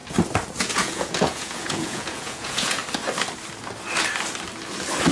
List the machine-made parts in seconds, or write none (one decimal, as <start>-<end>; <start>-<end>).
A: 0.6-2.8